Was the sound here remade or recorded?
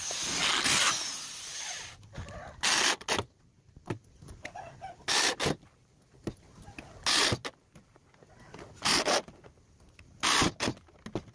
recorded